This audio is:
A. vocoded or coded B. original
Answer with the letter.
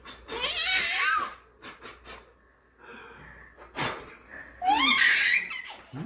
B